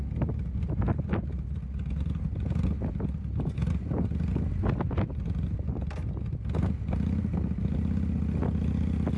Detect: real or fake real